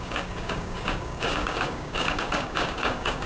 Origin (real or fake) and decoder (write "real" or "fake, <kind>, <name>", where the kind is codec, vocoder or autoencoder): fake, codec, DAC